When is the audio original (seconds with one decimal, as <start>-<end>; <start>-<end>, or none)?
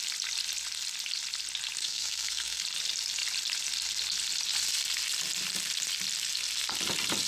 0.0-1.8; 2.6-7.3